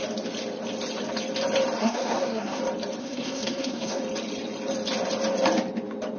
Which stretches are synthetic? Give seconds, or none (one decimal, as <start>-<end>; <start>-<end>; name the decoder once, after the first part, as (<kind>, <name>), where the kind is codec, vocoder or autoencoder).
1.8-2.6 (codec, SNAC); 3.0-4.0